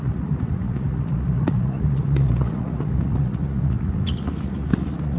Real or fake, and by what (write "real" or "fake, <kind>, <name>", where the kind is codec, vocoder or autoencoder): fake, vocoder, Vocos